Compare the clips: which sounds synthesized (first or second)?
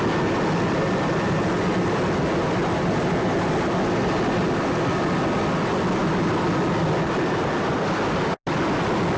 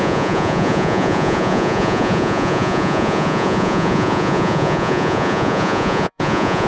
second